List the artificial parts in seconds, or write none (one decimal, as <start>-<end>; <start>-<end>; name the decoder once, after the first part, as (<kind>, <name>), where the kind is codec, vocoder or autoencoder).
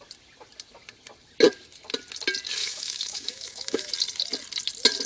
2.6-3.9 (autoencoder, DAC-VAE)